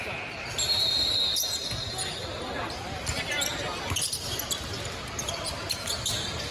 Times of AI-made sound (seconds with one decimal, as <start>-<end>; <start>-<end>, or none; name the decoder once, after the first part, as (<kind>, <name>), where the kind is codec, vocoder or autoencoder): none